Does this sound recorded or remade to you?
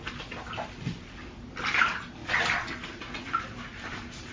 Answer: recorded